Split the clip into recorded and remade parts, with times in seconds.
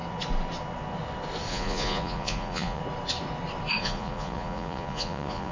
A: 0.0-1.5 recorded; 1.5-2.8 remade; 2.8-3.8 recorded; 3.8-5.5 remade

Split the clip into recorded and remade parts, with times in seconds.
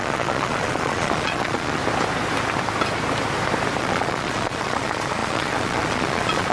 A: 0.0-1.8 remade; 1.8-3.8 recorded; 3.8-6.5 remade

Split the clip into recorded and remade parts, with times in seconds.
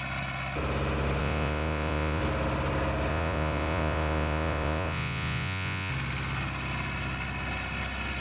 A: 0.0-1.2 recorded; 1.2-2.2 remade; 2.2-3.1 recorded; 3.1-5.9 remade; 5.9-8.2 recorded